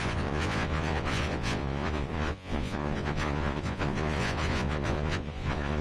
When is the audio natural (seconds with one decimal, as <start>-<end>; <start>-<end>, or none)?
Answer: none